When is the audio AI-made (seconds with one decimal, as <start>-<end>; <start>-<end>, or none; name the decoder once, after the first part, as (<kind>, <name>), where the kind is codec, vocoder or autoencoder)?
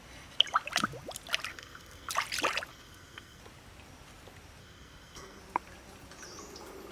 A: 1.5-2.1 (codec, SNAC); 2.7-3.4; 4.6-5.4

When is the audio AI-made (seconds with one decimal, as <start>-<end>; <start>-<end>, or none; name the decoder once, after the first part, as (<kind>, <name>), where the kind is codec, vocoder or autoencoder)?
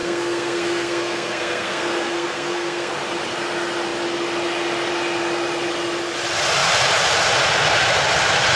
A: 0.0-2.9 (codec, SNAC)